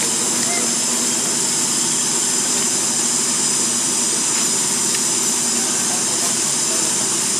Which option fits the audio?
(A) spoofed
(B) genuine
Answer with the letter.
B